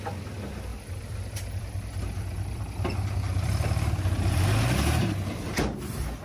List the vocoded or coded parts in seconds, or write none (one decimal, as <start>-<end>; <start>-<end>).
0.7-4.4; 5.0-6.2